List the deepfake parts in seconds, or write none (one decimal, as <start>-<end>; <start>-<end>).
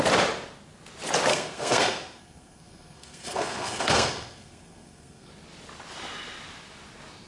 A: 1.3-5.3